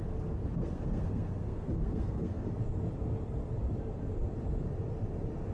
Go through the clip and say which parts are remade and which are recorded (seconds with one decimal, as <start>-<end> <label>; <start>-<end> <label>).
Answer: 0.0-0.6 recorded; 0.6-2.5 remade; 2.5-5.5 recorded